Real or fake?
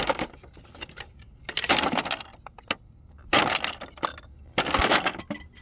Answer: real